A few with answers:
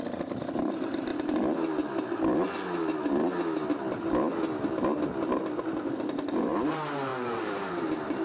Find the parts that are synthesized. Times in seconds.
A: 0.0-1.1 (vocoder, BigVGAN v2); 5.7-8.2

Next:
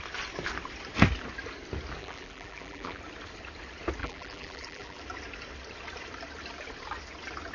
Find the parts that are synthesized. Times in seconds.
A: 2.0-3.0 (vocoder, BigVGAN v2); 4.0-5.0